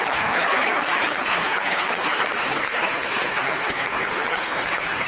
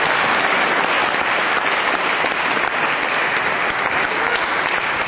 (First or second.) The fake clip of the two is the first